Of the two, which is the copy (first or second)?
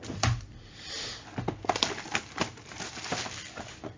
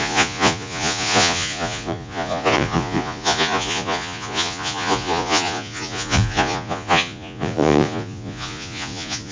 second